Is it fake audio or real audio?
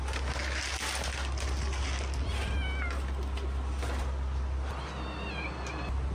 real